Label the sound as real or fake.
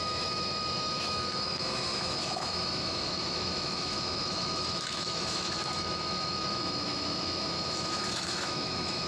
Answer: fake